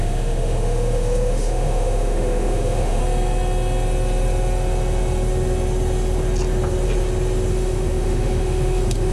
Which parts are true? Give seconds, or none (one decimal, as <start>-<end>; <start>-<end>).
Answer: 3.0-7.5